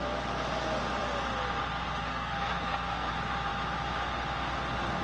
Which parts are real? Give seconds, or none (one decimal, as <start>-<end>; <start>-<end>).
0.0-2.1; 3.1-5.0